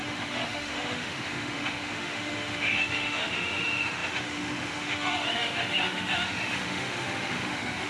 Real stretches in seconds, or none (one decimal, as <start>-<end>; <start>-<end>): none